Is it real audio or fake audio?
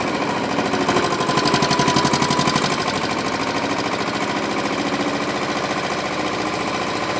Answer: real